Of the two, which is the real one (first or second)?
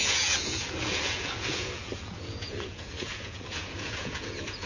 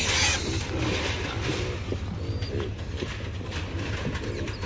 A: second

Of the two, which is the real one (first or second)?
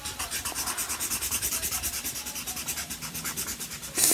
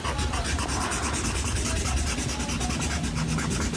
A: second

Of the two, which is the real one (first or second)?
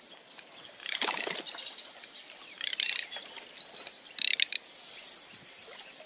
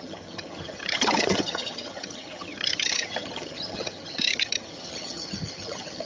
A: first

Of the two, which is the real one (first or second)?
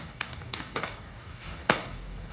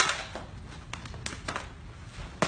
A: second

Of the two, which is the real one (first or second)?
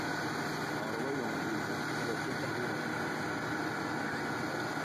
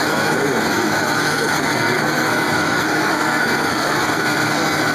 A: first